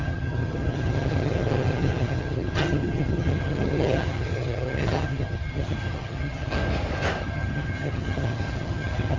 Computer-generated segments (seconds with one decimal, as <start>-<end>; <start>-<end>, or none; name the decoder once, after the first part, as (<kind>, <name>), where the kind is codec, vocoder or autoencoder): 0.0-6.6 (vocoder, HiFi-GAN); 7.2-9.2